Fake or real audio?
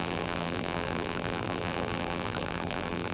fake